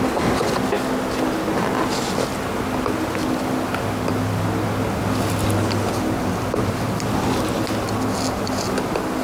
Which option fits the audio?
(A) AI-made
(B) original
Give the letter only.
B